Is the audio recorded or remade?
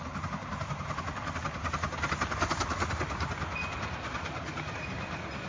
recorded